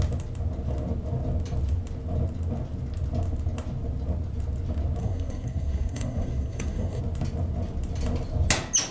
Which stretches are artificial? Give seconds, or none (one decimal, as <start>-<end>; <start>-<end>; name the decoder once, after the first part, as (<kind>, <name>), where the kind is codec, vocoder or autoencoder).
5.0-7.0 (codec, SNAC)